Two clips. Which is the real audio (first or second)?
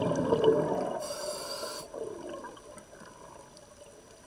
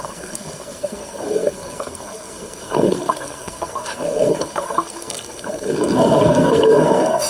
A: first